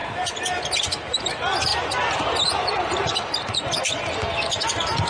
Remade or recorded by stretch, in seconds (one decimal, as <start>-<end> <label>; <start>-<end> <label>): 0.0-0.8 remade; 0.8-1.7 recorded; 1.7-3.8 remade; 3.8-5.1 recorded